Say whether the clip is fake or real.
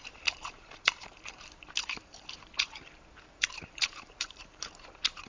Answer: fake